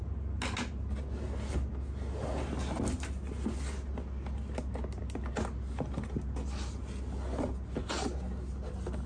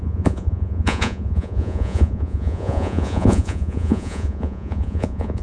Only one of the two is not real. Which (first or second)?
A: second